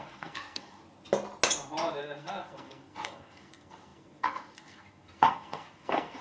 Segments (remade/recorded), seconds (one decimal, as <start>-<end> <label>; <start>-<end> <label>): 0.0-0.8 remade; 0.8-2.0 recorded; 2.0-6.2 remade